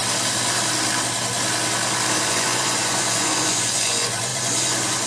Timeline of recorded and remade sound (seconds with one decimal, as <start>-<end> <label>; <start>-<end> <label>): 0.0-2.3 recorded; 2.3-5.1 remade